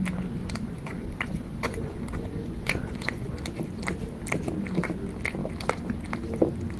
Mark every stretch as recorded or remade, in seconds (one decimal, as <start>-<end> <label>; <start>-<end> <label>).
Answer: 0.0-0.4 recorded; 0.4-3.3 remade; 3.3-6.8 recorded

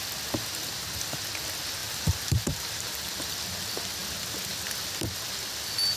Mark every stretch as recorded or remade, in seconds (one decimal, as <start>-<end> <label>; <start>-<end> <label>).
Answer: 0.0-1.8 recorded; 1.8-3.2 remade; 3.2-6.0 recorded

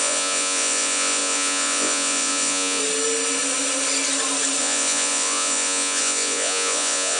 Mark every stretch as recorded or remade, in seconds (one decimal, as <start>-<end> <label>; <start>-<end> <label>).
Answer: 0.0-2.8 remade; 2.8-4.6 recorded; 4.6-7.2 remade

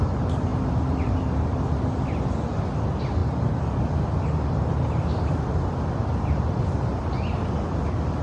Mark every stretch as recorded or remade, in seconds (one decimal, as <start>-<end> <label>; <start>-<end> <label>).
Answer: 0.0-8.2 recorded

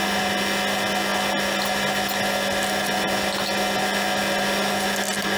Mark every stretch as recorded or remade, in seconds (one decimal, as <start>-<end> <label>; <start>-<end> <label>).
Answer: 0.0-5.4 recorded